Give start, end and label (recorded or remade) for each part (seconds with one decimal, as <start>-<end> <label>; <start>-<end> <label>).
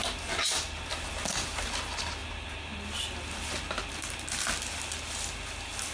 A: 0.0-5.9 recorded